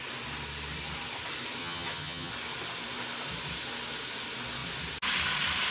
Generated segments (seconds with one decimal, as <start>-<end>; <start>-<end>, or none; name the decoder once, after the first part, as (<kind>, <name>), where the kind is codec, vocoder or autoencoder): 1.6-2.3 (vocoder, HiFi-GAN)